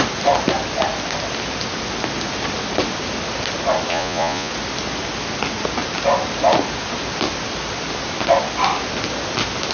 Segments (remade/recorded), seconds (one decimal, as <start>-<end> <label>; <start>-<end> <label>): 0.0-3.9 recorded; 3.9-4.5 remade; 4.5-9.7 recorded